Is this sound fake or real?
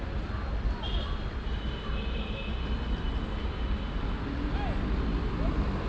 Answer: real